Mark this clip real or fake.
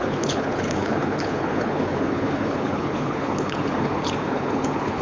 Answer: fake